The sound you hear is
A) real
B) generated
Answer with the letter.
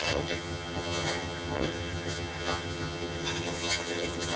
B